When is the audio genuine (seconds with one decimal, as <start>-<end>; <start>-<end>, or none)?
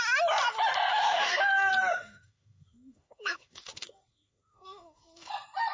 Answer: 0.0-0.9; 1.4-1.9; 5.3-5.7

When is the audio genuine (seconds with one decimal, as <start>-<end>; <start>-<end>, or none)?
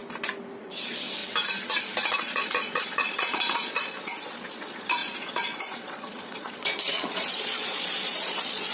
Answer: 0.0-0.6; 1.2-2.1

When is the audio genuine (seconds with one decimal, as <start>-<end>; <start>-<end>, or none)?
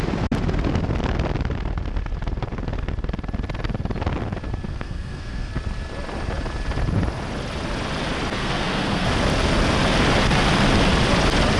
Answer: 0.0-4.7; 5.5-8.4; 9.1-11.6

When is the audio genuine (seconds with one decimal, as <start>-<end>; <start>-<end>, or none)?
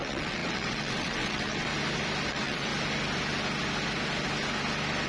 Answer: 1.7-2.3; 2.7-5.1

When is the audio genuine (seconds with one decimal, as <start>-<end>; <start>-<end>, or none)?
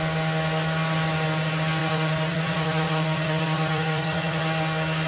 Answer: 0.0-1.8; 4.4-5.1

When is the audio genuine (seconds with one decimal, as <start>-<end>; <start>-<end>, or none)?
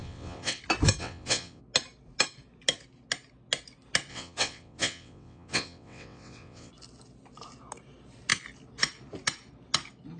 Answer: 0.6-1.0; 1.6-4.1; 6.7-10.2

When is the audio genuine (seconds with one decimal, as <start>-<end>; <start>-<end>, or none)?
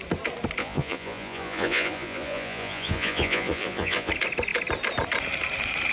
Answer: 0.0-0.6; 4.1-5.9